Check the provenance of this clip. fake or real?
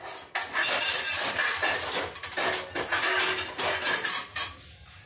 real